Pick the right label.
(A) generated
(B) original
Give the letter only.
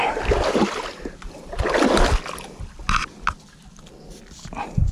B